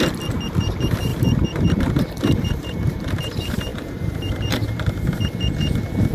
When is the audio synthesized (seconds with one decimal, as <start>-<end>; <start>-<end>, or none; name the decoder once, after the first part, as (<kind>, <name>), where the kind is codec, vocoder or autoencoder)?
1.1-3.0 (vocoder, BigVGAN v2); 3.7-5.2